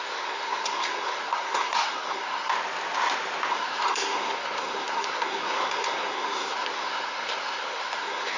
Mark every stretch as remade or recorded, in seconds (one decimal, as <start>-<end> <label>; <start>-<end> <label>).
0.0-2.5 remade; 2.5-3.5 recorded; 3.5-8.4 remade